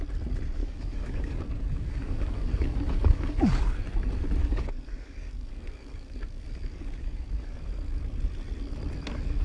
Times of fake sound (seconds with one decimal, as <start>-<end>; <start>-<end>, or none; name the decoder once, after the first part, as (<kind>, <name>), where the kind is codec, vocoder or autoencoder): 0.6-3.8 (codec, DAC); 4.4-8.0